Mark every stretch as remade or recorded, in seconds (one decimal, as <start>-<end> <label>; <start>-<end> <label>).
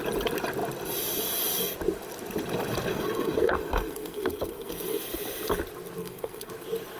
0.0-2.9 recorded; 2.9-5.0 remade; 5.0-6.0 recorded; 6.0-6.5 remade; 6.5-7.0 recorded